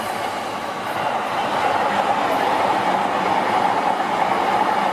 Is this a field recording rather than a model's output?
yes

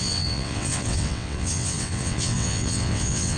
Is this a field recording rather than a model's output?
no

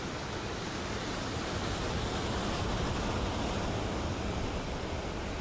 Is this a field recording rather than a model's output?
yes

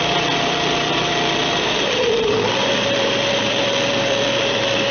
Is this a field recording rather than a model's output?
no